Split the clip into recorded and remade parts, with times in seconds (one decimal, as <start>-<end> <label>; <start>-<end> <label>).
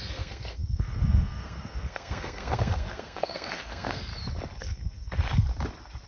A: 0.0-4.1 remade; 4.1-4.6 recorded; 4.6-5.5 remade; 5.5-6.1 recorded